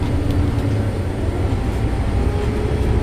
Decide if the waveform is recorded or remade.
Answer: recorded